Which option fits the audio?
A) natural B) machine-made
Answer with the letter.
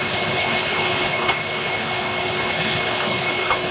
B